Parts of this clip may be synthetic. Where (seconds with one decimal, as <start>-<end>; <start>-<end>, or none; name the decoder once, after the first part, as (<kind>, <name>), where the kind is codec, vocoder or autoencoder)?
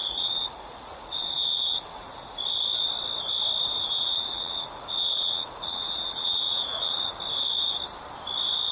0.0-2.4 (vocoder, Vocos); 3.8-7.2